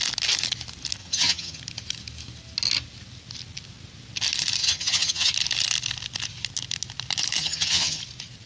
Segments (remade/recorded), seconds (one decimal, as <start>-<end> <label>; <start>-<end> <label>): 0.0-1.0 recorded; 1.0-1.6 remade; 1.6-4.6 recorded; 4.6-5.3 remade; 5.3-7.4 recorded; 7.4-8.0 remade; 8.0-8.5 recorded